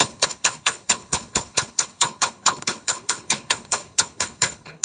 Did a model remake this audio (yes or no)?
yes